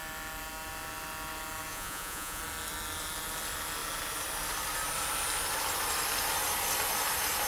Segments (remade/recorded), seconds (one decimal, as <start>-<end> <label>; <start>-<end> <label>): 0.0-1.7 recorded; 1.7-2.4 remade; 2.4-7.5 recorded

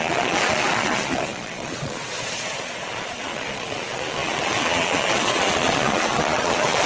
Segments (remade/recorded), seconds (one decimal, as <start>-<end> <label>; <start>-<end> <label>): 0.0-6.9 remade

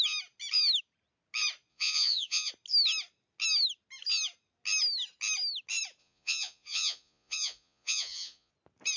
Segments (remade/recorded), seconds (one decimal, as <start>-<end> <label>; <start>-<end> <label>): 0.0-1.7 recorded; 1.7-2.5 remade; 2.5-6.0 recorded; 6.0-8.5 remade; 8.5-9.0 recorded

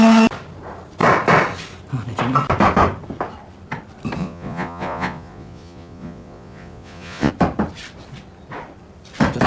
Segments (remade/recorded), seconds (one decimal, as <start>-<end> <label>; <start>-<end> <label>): 0.0-4.2 recorded; 4.2-7.3 remade; 7.3-9.5 recorded

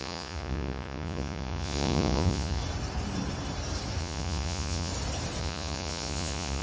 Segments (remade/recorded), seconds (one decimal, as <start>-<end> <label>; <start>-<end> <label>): 0.0-2.6 remade; 2.6-4.0 recorded; 4.0-4.9 remade; 4.9-5.4 recorded; 5.4-6.6 remade

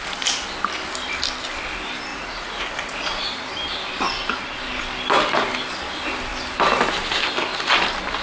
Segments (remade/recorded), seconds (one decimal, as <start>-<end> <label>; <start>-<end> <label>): 0.0-2.1 recorded; 2.1-3.5 remade; 3.5-8.2 recorded

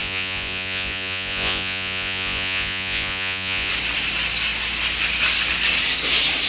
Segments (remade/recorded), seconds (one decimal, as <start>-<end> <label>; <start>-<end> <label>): 0.0-3.7 remade; 3.7-6.5 recorded

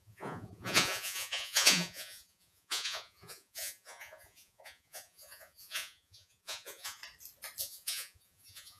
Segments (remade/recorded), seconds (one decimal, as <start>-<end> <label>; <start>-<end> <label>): 0.0-7.0 remade; 7.0-7.6 recorded; 7.6-8.8 remade